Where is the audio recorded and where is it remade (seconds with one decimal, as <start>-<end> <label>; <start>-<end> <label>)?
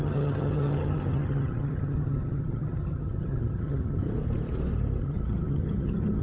0.0-4.0 remade; 4.0-5.0 recorded; 5.0-6.2 remade